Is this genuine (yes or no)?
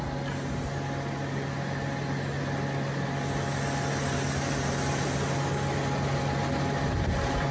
yes